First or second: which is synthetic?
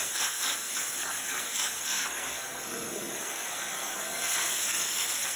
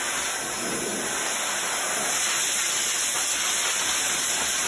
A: first